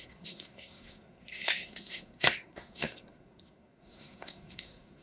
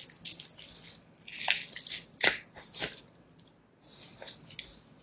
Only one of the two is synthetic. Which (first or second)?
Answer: first